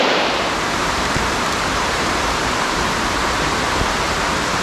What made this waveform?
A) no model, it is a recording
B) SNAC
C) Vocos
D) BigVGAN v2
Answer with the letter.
D